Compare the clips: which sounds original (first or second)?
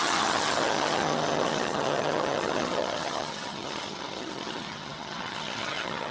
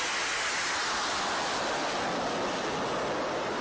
second